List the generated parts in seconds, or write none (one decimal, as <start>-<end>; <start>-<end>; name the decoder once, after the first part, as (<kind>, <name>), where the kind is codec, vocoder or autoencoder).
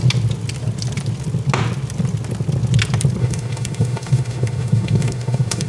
3.2-5.7 (autoencoder, DAC-VAE)